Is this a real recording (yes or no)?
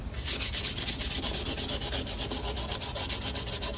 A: yes